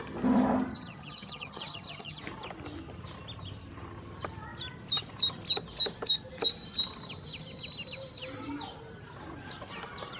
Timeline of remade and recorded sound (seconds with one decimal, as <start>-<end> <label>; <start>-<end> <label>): 0.0-0.7 recorded; 0.7-2.2 remade; 2.2-10.2 recorded